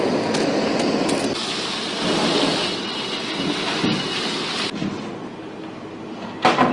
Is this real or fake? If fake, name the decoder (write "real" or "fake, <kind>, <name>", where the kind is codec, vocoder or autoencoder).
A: real